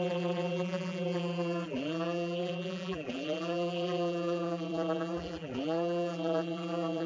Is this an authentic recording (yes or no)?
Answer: no